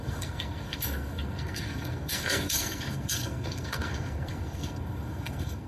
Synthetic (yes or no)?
yes